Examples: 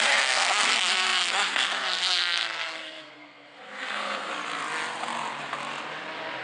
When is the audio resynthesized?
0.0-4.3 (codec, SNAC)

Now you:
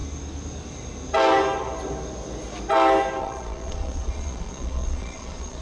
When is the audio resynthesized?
3.2-5.6 (vocoder, Vocos)

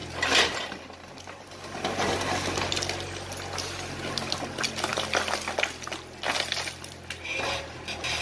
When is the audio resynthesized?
none

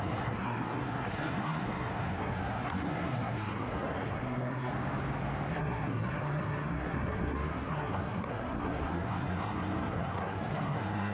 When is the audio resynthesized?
0.0-4.7 (codec, SNAC); 5.5-11.1

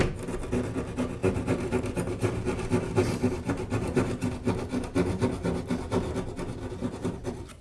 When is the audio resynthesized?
1.2-4.3 (vocoder, BigVGAN v2); 6.8-7.6

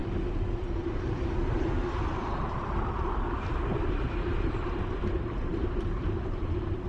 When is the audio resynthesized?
3.9-6.9 (vocoder, BigVGAN v2)

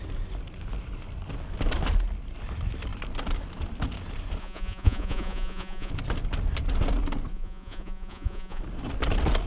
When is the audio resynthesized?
4.4-5.9 (vocoder, Vocos); 7.3-8.6